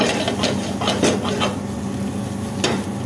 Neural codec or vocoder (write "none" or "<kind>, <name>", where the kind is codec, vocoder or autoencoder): none